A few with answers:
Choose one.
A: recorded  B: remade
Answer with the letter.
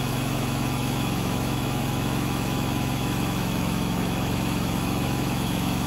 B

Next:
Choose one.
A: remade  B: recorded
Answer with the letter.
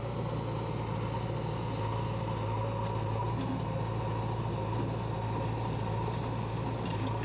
B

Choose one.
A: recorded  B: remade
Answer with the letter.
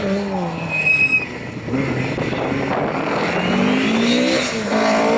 A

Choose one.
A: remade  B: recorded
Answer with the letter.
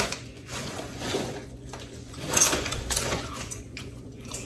A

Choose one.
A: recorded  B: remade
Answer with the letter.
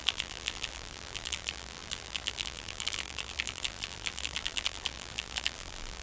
B